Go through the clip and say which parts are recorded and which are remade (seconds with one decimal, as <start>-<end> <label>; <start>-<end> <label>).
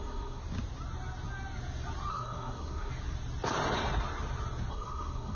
0.0-0.4 remade; 0.4-2.1 recorded; 2.1-2.9 remade; 2.9-4.7 recorded; 4.7-5.3 remade